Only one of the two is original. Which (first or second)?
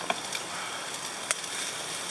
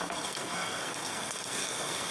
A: first